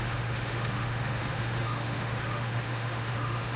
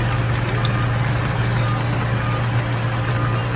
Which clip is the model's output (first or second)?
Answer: first